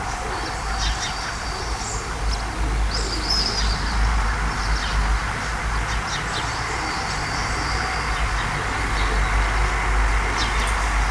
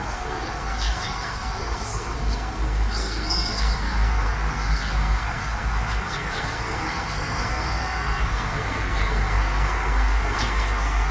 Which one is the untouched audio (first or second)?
first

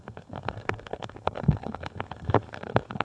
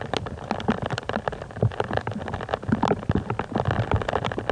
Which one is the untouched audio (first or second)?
second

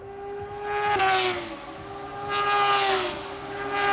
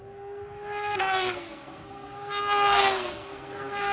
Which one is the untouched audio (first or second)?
first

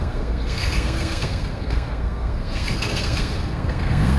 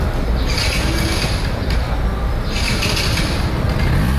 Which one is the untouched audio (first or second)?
second